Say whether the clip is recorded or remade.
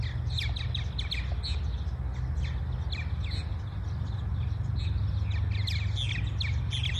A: recorded